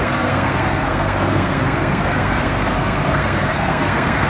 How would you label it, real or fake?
fake